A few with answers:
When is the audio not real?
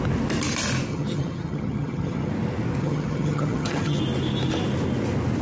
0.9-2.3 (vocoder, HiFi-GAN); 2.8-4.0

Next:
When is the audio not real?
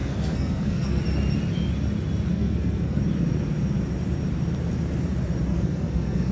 0.0-1.0 (codec, SNAC); 2.3-3.0; 5.5-6.3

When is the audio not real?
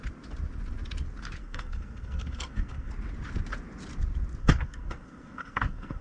1.4-2.9 (codec, SNAC); 4.4-6.0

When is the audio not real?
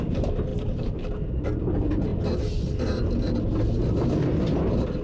0.5-1.0 (vocoder, BigVGAN v2)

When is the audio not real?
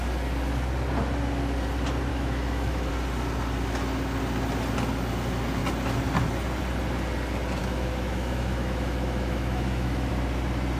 2.1-2.9 (autoencoder, DAC-VAE); 7.6-10.1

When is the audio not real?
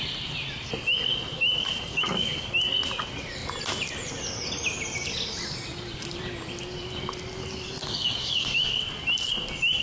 1.9-2.5 (codec, DAC); 7.8-8.8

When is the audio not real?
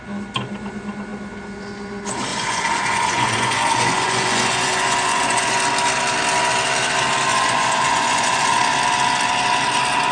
2.3-5.6 (vocoder, Vocos); 7.3-8.6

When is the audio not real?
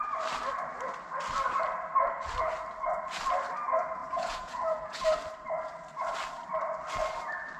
4.0-5.0 (vocoder, Vocos)